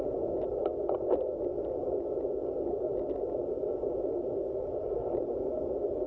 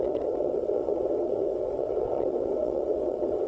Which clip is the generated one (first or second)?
second